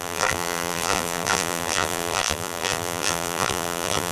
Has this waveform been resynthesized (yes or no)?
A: yes